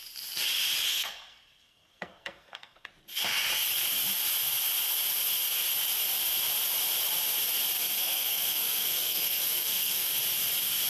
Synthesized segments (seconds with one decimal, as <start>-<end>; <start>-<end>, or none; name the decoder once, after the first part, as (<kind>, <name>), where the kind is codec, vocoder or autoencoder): 0.9-2.9 (codec, SNAC); 7.8-10.1